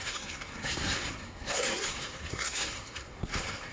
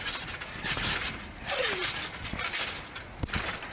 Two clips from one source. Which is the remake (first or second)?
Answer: first